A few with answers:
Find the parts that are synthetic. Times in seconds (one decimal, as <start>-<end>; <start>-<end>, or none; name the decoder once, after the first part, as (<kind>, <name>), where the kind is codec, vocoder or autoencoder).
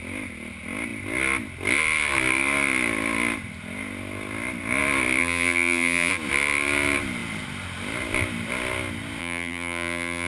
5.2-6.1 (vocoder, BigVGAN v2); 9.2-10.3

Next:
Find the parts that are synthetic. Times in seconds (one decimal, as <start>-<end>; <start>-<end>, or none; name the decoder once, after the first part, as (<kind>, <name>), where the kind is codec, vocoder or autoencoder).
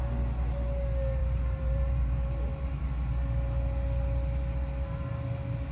1.2-2.9 (vocoder, BigVGAN v2)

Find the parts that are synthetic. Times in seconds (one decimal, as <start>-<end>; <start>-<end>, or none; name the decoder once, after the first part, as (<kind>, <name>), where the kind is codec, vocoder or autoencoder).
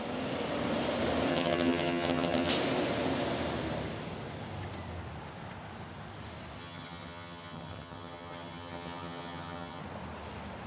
1.3-2.5 (vocoder, HiFi-GAN); 6.6-9.8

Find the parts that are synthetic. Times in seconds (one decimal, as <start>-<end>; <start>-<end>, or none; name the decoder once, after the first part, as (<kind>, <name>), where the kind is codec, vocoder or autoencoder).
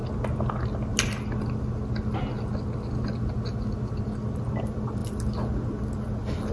none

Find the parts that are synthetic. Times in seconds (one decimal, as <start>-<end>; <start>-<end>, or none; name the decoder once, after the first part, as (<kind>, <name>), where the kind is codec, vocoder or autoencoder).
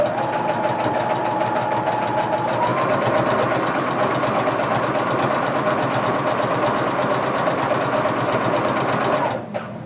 none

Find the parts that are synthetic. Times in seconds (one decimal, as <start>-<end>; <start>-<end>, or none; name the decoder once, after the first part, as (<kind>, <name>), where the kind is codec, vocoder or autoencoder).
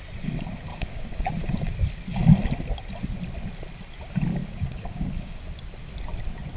0.7-1.3 (codec, DAC); 4.3-5.4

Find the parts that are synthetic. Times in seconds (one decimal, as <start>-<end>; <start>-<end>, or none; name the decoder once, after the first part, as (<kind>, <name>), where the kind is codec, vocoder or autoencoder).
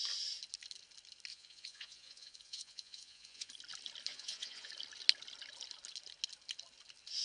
1.3-3.5 (vocoder, Vocos); 4.1-4.7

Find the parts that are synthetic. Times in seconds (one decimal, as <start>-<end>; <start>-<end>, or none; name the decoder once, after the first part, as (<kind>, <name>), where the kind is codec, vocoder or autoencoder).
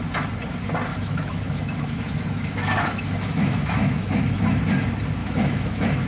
0.9-4.6 (autoencoder, DAC-VAE); 5.2-6.1